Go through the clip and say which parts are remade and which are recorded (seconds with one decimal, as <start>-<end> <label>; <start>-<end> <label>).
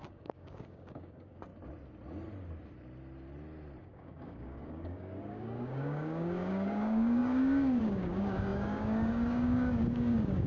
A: 0.0-1.5 remade; 1.5-3.8 recorded; 3.8-10.5 remade